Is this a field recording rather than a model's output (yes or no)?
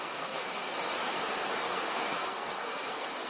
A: no